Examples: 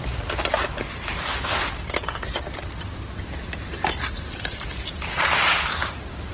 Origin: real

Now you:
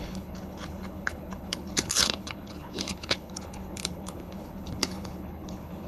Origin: fake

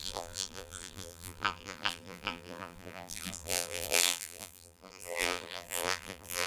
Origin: fake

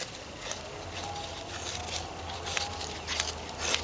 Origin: real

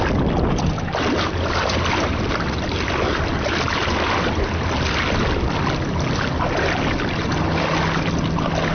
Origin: real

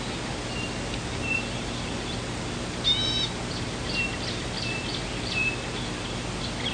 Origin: real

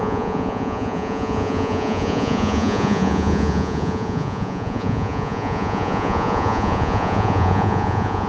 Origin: fake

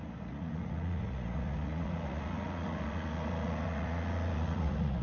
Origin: fake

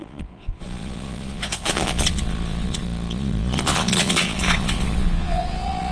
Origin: fake